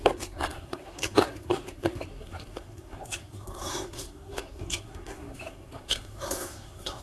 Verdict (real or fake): fake